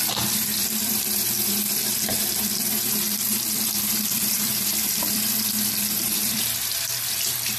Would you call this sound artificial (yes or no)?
yes